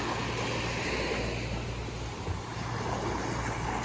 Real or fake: real